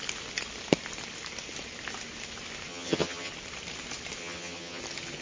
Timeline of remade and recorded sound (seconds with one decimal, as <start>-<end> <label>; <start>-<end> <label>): 0.0-2.7 recorded; 2.7-3.3 remade; 3.3-4.2 recorded; 4.2-4.8 remade; 4.8-5.2 recorded